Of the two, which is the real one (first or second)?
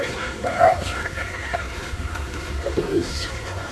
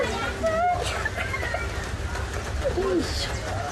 second